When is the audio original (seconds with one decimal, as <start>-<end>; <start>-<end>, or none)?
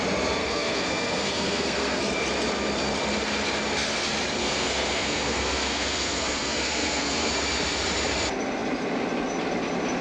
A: 0.0-0.4; 2.0-4.4; 7.3-10.0